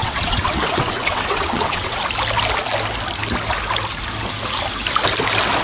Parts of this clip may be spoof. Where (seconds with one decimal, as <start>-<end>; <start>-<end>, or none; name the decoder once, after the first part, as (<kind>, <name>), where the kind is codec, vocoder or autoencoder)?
0.0-2.0 (vocoder, WaveNeXt)